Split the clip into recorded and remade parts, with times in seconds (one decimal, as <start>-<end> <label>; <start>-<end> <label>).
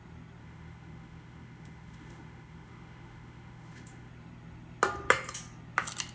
0.0-0.4 recorded; 0.4-4.1 remade; 4.1-6.1 recorded